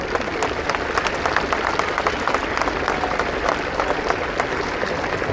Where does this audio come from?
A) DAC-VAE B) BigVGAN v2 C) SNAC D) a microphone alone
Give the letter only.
D